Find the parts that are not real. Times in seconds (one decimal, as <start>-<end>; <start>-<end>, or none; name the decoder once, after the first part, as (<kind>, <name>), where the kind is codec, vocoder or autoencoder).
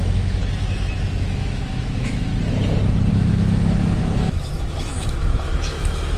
0.0-0.4 (autoencoder, DAC-VAE); 1.2-2.3; 3.1-6.2